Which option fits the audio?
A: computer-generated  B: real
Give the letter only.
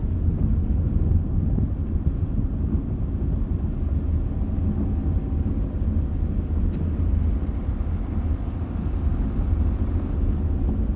B